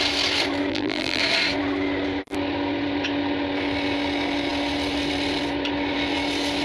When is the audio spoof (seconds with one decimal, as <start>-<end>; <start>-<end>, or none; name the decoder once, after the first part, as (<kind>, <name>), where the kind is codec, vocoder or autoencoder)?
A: 0.7-1.2 (vocoder, BigVGAN v2)